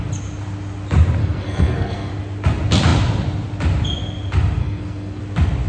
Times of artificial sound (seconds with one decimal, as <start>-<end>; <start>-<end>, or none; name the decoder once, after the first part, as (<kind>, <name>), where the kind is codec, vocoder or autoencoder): 1.2-2.1 (codec, SNAC); 4.6-5.2